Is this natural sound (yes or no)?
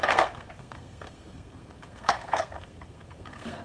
no